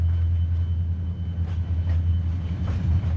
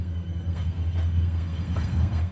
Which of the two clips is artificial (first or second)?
second